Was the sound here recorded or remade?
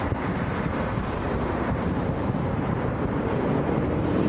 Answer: remade